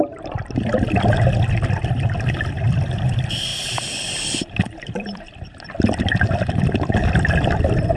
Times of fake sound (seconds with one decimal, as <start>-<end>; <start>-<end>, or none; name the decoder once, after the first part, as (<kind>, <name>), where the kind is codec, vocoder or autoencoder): 3.5-5.2 (vocoder, BigVGAN v2); 7.0-8.0